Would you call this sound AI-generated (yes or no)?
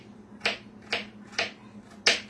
no